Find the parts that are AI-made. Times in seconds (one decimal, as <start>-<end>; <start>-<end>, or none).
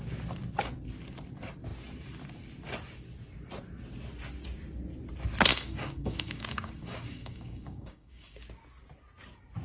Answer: 5.5-8.5